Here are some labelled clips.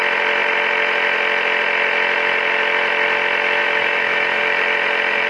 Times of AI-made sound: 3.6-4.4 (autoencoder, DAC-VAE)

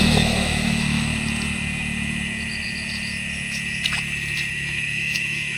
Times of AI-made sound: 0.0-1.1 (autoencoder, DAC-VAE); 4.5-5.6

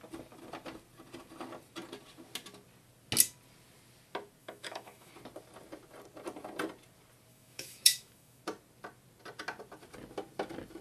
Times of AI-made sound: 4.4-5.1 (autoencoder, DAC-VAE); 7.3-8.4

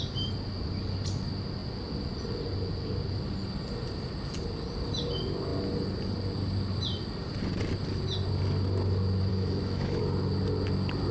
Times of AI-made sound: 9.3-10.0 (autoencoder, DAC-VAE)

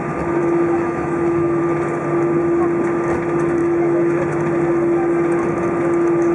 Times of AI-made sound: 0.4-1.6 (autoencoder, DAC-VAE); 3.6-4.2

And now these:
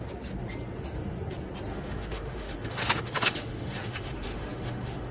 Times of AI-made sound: 1.7-5.1 (autoencoder, DAC-VAE)

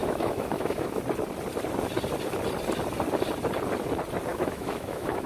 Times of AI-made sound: 0.0-1.0 (autoencoder, DAC-VAE); 4.3-5.3